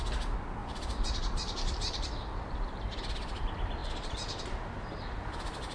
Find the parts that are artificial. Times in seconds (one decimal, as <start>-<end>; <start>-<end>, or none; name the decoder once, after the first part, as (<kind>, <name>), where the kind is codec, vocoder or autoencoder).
0.6-2.9 (vocoder, BigVGAN v2); 3.8-4.4